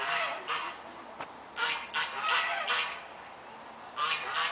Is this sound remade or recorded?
recorded